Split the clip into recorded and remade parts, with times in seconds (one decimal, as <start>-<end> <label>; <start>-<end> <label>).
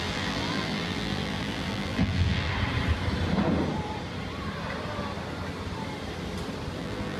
0.0-2.5 remade; 2.5-6.8 recorded; 6.8-7.2 remade